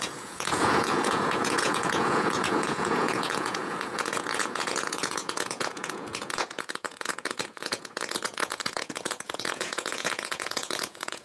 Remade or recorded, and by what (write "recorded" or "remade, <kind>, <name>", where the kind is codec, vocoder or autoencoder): remade, vocoder, Vocos